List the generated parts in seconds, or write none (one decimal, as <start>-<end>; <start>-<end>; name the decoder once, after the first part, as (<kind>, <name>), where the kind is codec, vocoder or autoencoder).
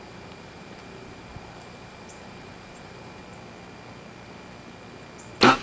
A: 0.0-3.2 (vocoder, BigVGAN v2)